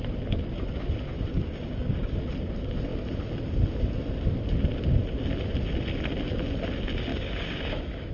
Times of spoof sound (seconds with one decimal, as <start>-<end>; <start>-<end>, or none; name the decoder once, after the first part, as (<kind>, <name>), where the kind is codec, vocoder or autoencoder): 1.3-2.2 (codec, DAC); 7.1-8.1